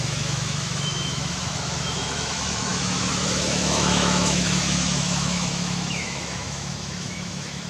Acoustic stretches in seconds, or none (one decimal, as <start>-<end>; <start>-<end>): none